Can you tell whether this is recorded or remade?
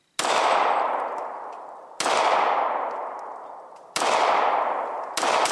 recorded